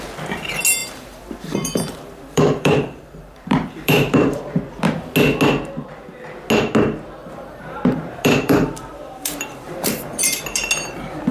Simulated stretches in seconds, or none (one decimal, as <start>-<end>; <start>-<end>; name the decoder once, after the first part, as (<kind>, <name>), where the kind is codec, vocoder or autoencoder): 0.8-4.6 (vocoder, BigVGAN v2); 7.2-10.4